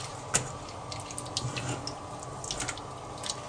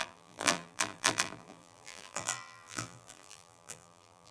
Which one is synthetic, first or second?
second